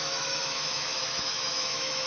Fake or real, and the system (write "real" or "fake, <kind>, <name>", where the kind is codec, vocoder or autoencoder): fake, autoencoder, DAC-VAE